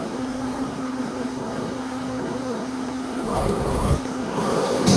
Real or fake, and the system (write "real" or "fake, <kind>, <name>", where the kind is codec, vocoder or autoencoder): fake, codec, SNAC